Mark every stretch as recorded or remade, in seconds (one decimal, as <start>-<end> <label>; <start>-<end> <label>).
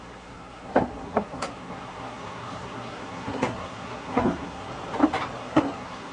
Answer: 0.0-4.7 remade; 4.7-5.4 recorded; 5.4-6.1 remade